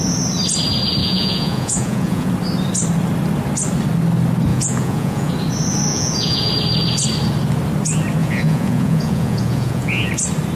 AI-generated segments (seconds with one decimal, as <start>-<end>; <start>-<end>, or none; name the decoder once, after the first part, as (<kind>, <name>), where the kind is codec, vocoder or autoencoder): 1.0-2.3 (vocoder, Vocos); 4.5-5.3; 5.9-6.5; 8.2-10.1